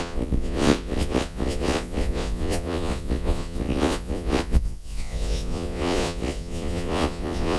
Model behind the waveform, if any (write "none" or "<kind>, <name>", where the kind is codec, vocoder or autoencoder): vocoder, Vocos